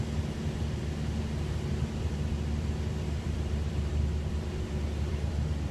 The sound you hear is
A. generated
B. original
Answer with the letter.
A